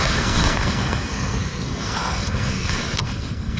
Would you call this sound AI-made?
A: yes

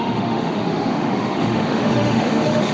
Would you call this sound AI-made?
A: yes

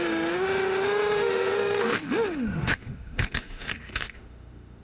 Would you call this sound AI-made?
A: yes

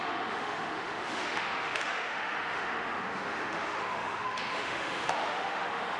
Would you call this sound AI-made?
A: yes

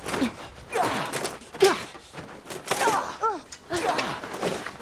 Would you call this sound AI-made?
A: no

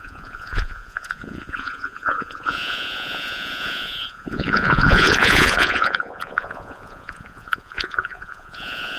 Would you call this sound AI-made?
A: yes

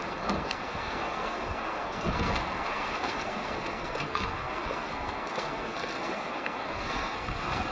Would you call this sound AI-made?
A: yes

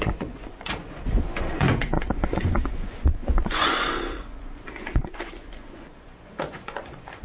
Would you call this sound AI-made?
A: yes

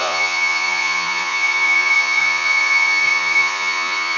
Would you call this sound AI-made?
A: yes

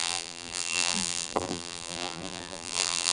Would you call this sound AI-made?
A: yes